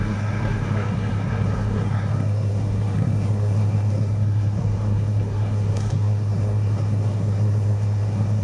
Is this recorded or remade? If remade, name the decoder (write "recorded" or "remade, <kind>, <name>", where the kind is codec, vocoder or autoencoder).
remade, codec, SNAC